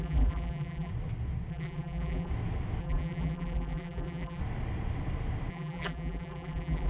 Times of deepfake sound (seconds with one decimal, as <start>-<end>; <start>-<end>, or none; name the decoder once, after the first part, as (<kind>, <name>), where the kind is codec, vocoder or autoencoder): 0.0-0.9 (vocoder, BigVGAN v2); 1.5-2.3; 2.8-4.4; 5.5-6.9